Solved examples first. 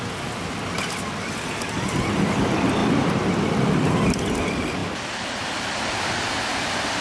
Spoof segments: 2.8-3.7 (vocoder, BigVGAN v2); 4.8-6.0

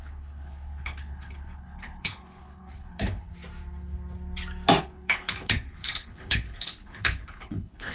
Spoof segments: 0.0-3.3 (codec, HILCodec); 4.8-7.9

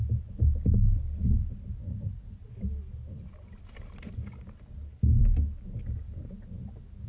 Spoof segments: 1.8-2.4 (vocoder, Vocos)

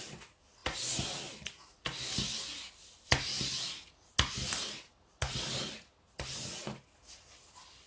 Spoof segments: none

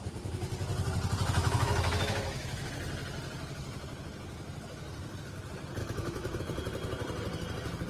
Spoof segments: 1.4-2.7 (autoencoder, DAC-VAE); 5.8-6.4

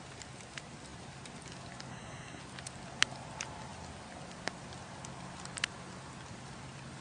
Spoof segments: 1.9-2.4 (codec, SNAC)